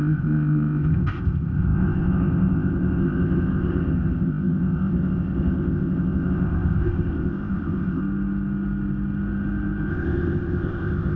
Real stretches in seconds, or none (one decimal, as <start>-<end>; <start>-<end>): 8.0-9.9